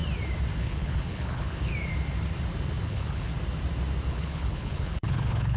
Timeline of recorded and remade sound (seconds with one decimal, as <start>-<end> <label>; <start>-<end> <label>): 0.0-0.6 recorded; 0.6-1.7 remade; 1.7-2.8 recorded; 2.8-3.3 remade; 3.3-4.1 recorded; 4.1-5.6 remade